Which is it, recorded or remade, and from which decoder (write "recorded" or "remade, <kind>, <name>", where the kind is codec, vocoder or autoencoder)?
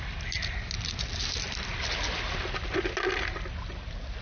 recorded